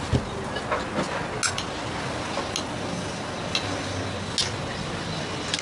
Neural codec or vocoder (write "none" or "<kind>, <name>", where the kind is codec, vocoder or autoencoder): none